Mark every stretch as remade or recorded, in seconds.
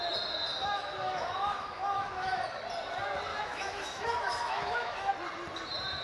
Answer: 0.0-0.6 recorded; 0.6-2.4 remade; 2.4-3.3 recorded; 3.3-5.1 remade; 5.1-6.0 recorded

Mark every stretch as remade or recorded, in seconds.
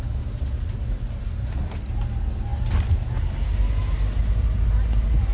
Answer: 0.0-5.3 recorded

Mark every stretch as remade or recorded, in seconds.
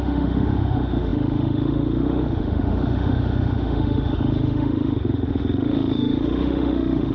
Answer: 0.0-7.1 remade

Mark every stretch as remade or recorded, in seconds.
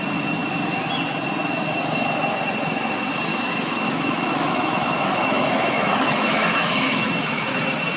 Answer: 0.0-3.3 recorded; 3.3-7.5 remade; 7.5-8.0 recorded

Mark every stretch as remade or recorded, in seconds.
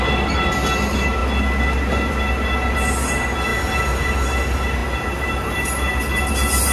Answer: 0.0-6.7 recorded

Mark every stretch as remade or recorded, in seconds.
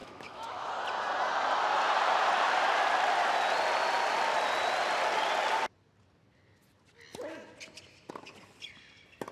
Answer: 0.0-0.7 remade; 0.7-9.3 recorded